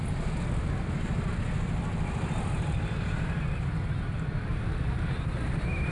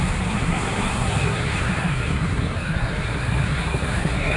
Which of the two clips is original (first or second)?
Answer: first